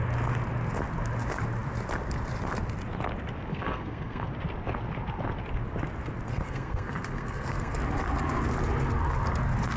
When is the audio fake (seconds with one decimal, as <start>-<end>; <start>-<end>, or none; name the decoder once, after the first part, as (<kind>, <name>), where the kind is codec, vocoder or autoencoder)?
3.5-4.3 (codec, SNAC); 6.3-7.8